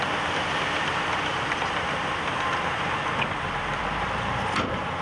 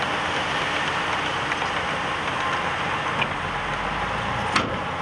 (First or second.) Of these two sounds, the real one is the second